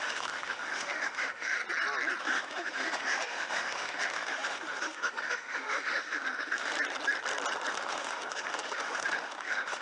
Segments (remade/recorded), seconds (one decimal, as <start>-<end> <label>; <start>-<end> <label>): 0.0-1.6 remade; 1.6-2.2 recorded; 2.2-6.7 remade; 6.7-7.7 recorded; 7.7-9.8 remade